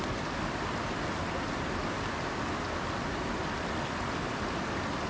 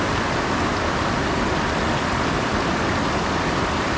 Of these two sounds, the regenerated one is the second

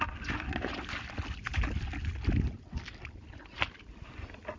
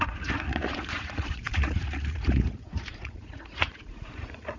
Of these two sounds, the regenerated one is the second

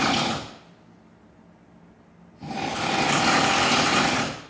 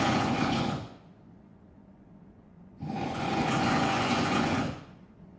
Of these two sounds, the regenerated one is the second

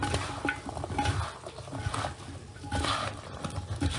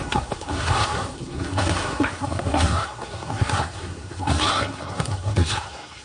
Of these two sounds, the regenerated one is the second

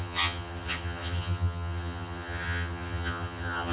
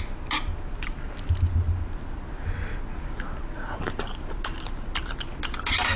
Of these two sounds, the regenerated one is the first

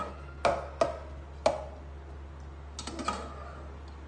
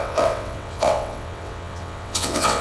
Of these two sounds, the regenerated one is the second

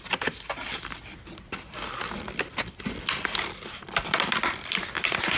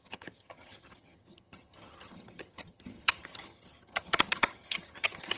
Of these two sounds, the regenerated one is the second